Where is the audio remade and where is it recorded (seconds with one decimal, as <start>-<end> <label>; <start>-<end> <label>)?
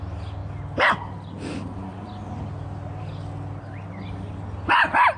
0.0-5.2 recorded